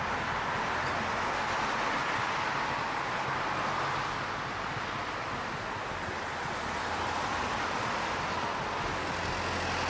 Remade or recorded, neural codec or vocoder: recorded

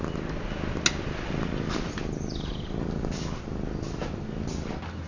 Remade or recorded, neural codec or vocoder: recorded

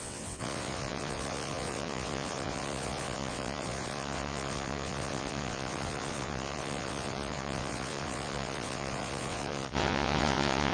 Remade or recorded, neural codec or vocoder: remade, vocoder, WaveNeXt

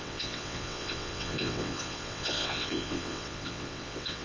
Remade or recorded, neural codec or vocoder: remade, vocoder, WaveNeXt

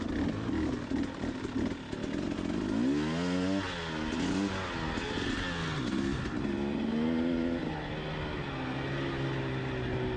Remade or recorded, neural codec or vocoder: recorded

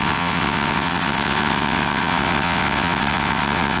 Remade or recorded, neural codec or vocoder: remade, vocoder, WaveNeXt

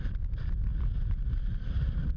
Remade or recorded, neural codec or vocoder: recorded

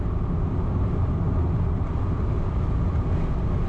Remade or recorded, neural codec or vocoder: recorded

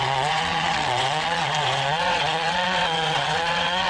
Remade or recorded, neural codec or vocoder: remade, vocoder, WaveNeXt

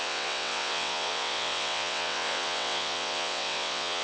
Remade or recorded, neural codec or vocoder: remade, vocoder, WaveNeXt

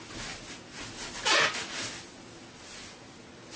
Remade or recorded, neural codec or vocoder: recorded